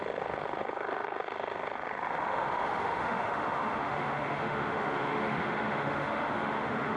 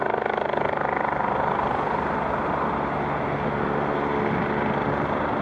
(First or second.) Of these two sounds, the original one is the second